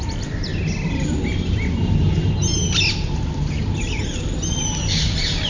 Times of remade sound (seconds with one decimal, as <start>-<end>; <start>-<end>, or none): none